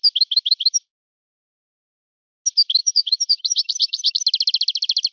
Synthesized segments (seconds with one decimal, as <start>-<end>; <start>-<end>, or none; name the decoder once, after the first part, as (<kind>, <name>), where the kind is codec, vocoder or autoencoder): 2.8-4.1 (vocoder, BigVGAN v2)